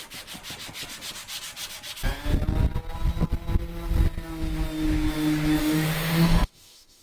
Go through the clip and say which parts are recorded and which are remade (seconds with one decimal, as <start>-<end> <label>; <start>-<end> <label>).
0.0-5.6 recorded; 5.6-7.0 remade